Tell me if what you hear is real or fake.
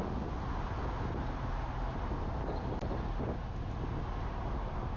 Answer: real